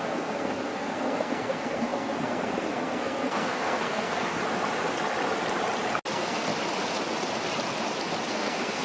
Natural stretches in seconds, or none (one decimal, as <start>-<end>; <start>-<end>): 4.4-6.1; 6.5-8.3